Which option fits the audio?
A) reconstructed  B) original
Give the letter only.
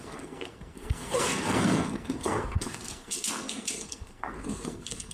A